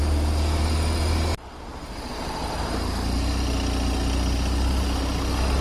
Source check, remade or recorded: recorded